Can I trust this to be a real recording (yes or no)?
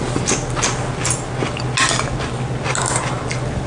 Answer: yes